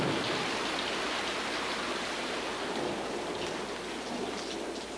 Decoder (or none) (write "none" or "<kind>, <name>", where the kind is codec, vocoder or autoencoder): none